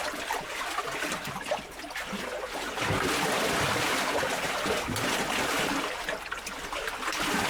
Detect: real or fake real